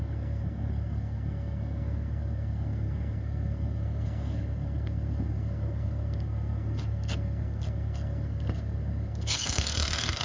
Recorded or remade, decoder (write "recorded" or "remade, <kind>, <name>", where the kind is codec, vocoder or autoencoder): remade, codec, SNAC